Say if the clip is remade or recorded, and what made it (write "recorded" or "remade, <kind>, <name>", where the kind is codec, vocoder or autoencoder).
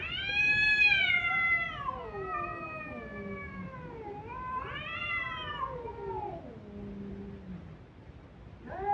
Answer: recorded